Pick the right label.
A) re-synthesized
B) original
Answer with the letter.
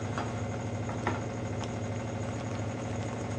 B